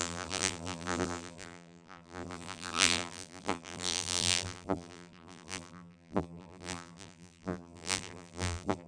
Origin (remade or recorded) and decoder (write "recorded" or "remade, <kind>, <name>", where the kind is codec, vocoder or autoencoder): remade, vocoder, BigVGAN v2